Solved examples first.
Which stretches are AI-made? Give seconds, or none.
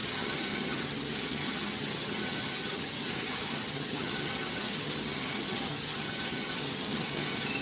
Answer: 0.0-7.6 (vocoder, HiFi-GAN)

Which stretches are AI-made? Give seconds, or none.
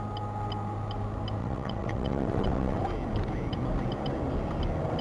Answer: 1.4-2.8 (vocoder, WaveNeXt)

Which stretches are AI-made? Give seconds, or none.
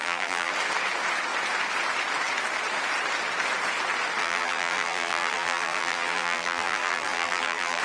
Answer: 0.0-0.5 (vocoder, BigVGAN v2); 4.2-7.8